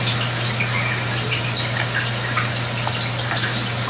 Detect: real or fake real